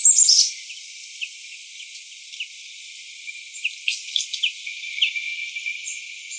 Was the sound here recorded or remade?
recorded